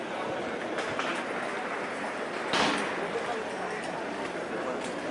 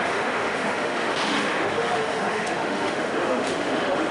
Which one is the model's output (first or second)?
second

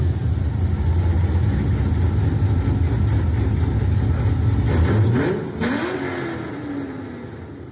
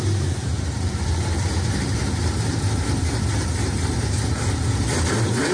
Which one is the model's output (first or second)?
second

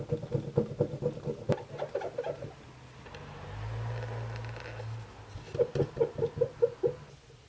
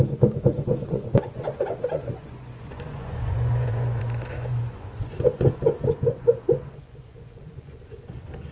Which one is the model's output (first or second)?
second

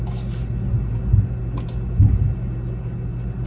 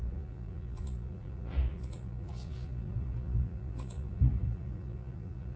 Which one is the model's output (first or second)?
second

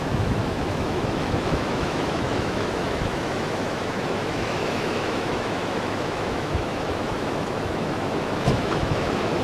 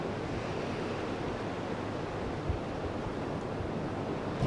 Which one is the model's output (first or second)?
first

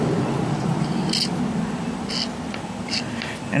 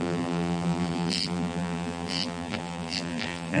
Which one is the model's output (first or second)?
second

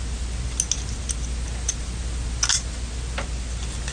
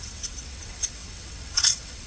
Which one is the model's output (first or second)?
second